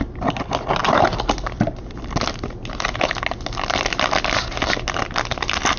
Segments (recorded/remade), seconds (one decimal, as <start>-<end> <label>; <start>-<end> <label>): 0.0-5.8 recorded